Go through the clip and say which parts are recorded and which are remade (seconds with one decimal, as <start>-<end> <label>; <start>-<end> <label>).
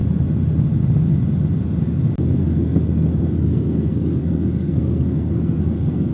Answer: 0.0-2.4 recorded; 2.4-6.1 remade